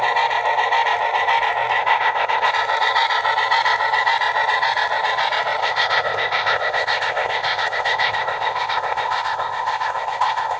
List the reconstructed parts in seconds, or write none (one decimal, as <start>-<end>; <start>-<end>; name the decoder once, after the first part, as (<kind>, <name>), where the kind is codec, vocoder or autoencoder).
1.8-2.5 (codec, ZipCodec); 5.6-10.6